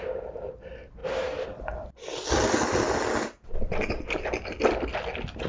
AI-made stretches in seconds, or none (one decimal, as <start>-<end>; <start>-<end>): none